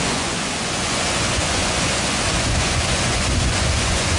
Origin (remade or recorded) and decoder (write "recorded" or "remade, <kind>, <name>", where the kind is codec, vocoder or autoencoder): remade, vocoder, Vocos